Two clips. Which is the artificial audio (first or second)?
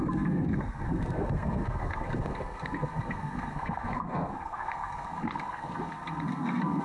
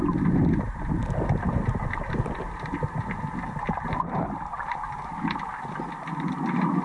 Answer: first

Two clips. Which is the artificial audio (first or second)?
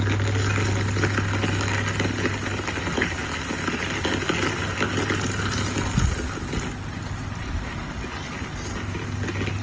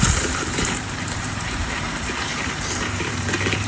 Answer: second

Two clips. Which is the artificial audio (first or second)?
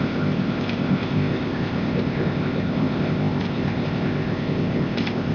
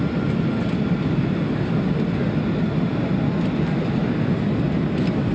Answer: first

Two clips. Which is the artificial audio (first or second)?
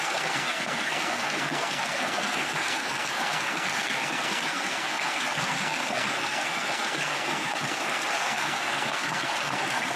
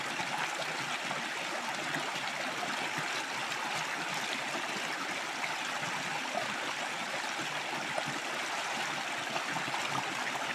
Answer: first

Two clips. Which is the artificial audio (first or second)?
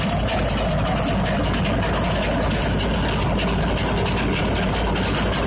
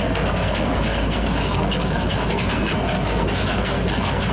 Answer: second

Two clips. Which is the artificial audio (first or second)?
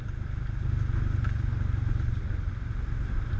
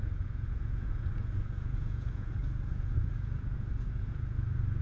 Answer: second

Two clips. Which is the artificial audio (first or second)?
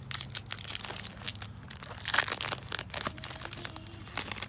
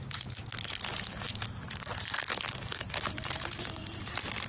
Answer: second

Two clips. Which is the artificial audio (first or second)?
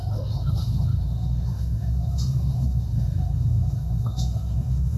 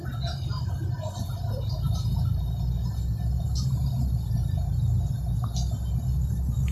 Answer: first